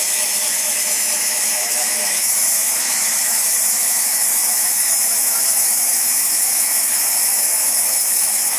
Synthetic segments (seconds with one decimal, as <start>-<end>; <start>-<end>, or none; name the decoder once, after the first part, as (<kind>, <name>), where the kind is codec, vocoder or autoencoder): 0.0-8.6 (autoencoder, DAC-VAE)